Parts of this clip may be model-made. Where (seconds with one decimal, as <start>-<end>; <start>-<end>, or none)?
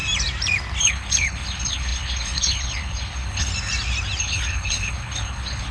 0.8-3.5; 4.2-5.7